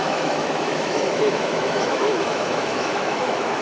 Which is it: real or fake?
fake